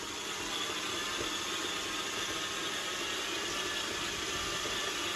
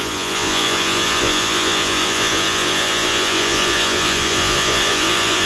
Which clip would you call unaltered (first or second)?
first